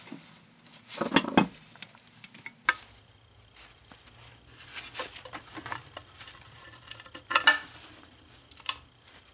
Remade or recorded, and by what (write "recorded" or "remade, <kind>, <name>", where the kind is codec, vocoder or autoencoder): recorded